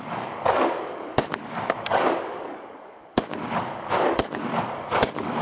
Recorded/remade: remade